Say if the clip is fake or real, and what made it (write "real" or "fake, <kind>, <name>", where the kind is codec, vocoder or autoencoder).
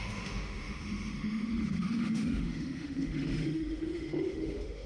fake, autoencoder, DAC-VAE